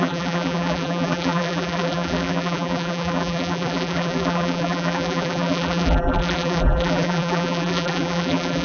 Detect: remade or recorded remade